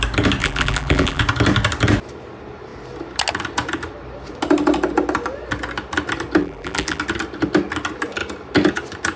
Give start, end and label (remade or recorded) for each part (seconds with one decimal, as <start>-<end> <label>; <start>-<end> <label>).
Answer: 0.0-0.4 recorded; 0.4-1.2 remade; 1.2-6.4 recorded; 6.4-7.0 remade; 7.0-9.2 recorded